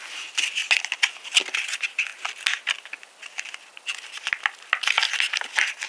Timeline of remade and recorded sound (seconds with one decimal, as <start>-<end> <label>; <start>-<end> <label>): 0.0-5.9 recorded